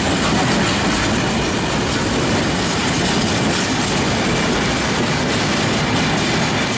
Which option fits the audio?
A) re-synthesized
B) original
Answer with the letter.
B